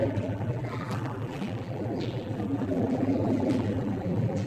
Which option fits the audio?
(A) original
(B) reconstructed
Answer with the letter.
B